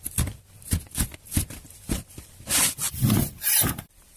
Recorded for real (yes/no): no